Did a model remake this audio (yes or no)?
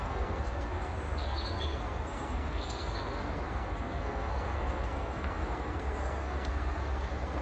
yes